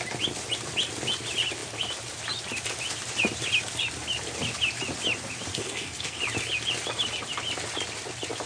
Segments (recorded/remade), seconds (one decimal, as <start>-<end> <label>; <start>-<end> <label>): 0.0-5.5 recorded; 5.5-6.2 remade; 6.2-8.5 recorded